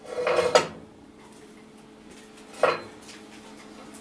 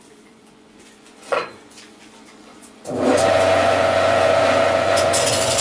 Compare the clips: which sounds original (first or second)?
first